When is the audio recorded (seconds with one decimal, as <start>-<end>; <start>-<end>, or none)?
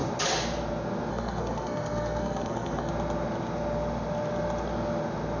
0.0-1.1; 2.9-5.4